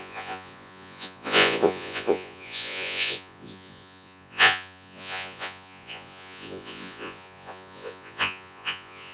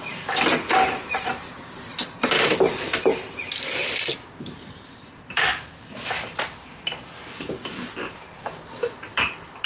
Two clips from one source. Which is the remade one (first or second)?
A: first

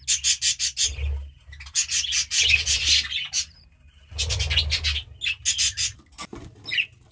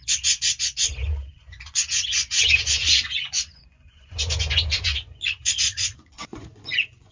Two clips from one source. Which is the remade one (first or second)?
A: second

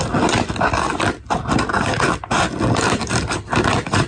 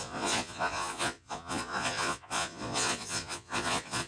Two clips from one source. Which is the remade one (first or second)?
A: second